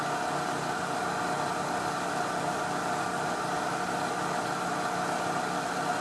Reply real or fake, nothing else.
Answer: real